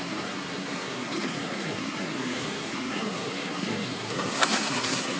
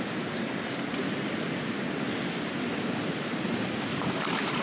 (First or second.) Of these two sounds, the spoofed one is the first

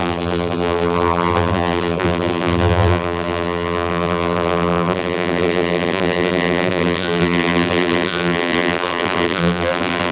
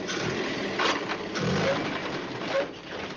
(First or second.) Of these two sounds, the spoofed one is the first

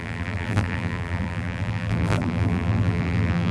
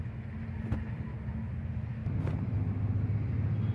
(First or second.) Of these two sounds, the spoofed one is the first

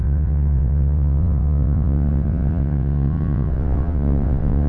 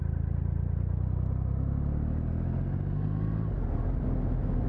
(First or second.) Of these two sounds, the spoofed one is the first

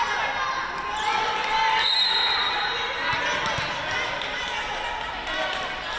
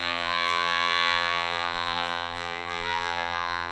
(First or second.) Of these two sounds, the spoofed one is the second